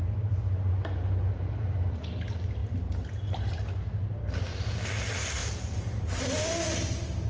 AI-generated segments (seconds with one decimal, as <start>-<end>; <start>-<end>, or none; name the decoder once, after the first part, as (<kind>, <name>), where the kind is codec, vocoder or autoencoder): 5.4-6.4 (vocoder, BigVGAN v2)